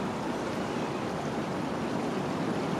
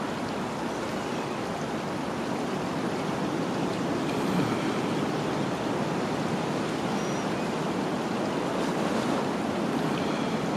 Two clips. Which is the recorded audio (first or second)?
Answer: second